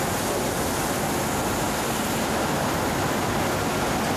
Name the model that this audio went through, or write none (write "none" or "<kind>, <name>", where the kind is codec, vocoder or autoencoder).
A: none